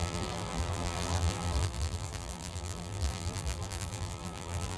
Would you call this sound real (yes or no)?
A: no